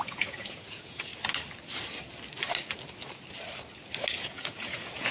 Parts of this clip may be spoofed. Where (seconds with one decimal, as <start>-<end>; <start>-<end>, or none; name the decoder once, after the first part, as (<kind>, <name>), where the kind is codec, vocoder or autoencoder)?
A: 0.0-1.1 (vocoder, Vocos); 4.2-5.1